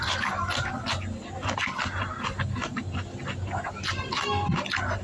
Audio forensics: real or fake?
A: real